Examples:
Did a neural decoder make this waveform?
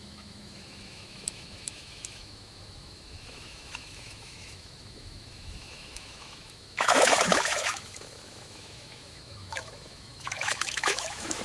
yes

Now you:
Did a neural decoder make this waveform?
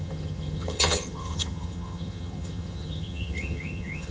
yes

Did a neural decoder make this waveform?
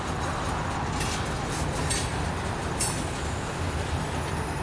no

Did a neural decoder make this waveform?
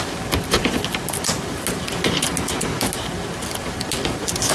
no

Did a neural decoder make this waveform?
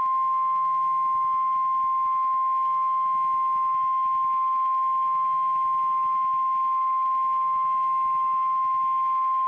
yes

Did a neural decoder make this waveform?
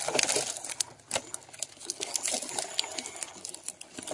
no